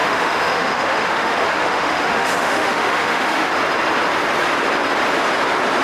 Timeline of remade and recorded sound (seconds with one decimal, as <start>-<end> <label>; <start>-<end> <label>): 0.0-3.5 remade; 3.5-5.8 recorded